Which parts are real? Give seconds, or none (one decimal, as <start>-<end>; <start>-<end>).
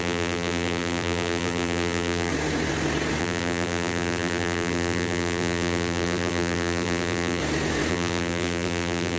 2.3-3.2; 7.4-7.9